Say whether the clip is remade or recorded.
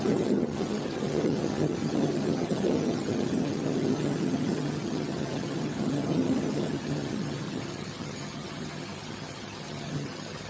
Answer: remade